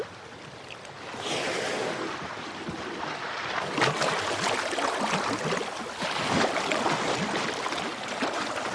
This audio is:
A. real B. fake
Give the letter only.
A